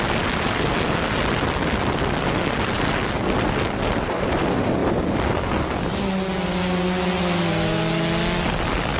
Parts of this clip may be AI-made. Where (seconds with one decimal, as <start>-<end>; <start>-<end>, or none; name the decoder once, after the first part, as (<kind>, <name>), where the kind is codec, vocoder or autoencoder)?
none